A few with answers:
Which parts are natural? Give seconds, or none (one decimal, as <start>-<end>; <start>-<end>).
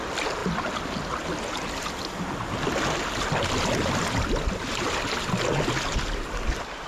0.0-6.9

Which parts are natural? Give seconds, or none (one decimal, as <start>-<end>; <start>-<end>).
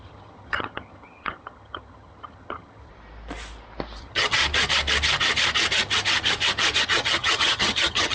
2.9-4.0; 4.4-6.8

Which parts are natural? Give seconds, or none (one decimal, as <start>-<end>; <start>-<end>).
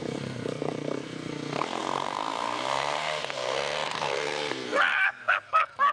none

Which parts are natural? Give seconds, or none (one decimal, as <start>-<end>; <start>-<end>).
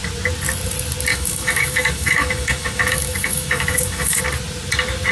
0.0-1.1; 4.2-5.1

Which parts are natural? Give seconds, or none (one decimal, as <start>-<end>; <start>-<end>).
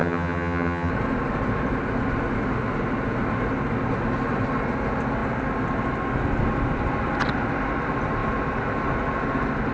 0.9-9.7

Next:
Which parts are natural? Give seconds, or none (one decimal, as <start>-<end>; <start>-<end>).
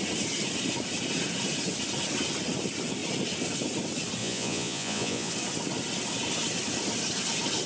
0.0-4.2; 5.3-7.7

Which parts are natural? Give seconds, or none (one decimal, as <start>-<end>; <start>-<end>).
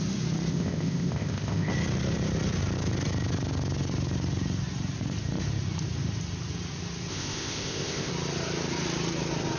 0.0-0.5; 1.7-7.1; 8.1-9.6